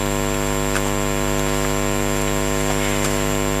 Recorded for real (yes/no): yes